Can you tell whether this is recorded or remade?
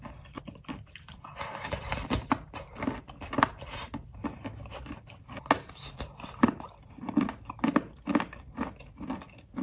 recorded